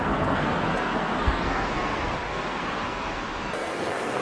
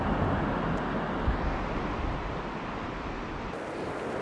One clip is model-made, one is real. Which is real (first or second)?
second